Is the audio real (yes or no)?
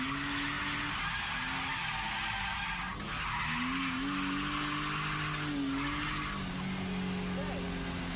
yes